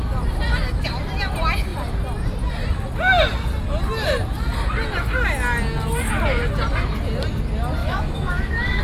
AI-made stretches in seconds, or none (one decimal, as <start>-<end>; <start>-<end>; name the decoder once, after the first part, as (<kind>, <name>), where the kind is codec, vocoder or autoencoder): 7.8-8.8 (autoencoder, DAC-VAE)